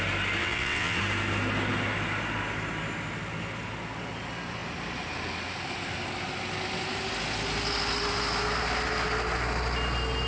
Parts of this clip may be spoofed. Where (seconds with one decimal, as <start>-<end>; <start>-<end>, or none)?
0.4-1.0

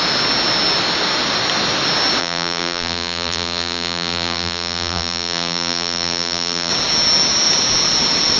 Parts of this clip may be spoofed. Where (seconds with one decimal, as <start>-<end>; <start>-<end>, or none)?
2.2-6.7

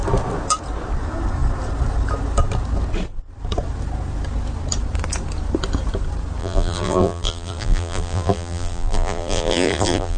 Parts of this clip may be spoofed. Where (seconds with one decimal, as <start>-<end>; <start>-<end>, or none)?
6.4-10.2

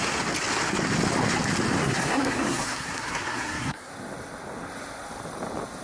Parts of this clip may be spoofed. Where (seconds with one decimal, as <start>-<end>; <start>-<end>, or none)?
1.8-3.9

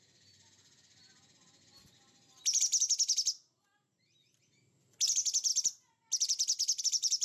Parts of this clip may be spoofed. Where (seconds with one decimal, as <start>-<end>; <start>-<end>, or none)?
none

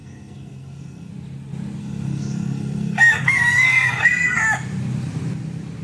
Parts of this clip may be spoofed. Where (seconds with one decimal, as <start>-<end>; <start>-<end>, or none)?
0.0-1.1; 1.8-4.4

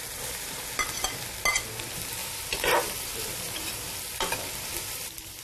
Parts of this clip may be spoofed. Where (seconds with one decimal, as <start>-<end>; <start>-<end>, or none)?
2.2-5.4

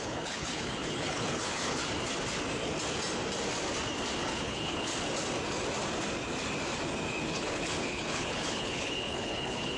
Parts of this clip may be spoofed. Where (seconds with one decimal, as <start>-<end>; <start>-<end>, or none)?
0.0-1.8; 4.2-4.9; 7.3-9.8